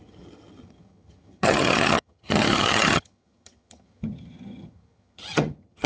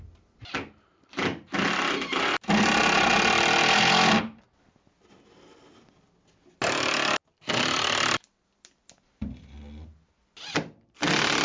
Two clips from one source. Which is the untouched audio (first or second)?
second